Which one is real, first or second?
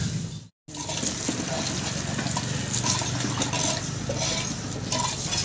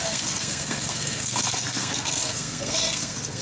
first